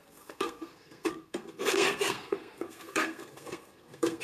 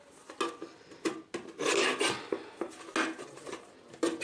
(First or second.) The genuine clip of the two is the second